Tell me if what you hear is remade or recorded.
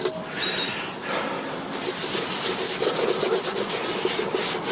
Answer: recorded